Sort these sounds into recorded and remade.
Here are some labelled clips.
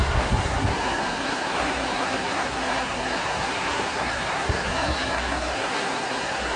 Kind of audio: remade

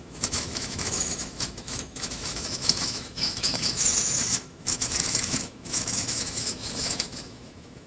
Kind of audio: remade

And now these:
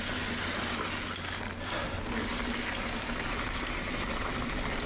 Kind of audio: recorded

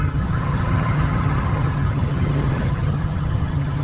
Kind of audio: remade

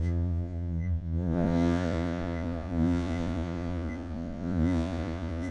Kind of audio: remade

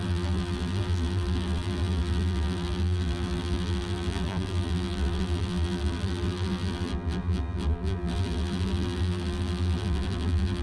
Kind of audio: remade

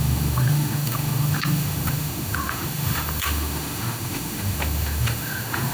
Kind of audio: remade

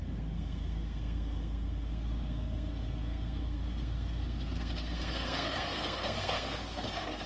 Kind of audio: remade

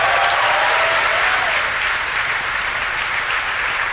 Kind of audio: recorded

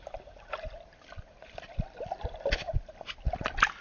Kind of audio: recorded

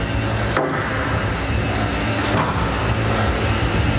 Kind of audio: recorded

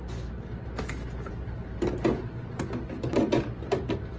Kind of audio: recorded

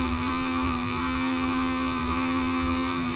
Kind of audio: remade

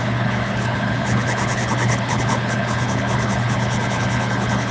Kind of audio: remade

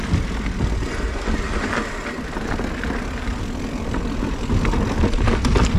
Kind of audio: recorded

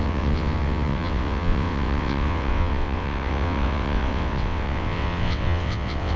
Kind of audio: remade